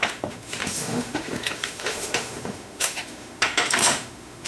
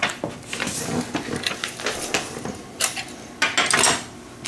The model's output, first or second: first